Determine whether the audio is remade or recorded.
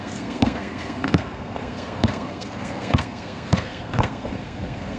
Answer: remade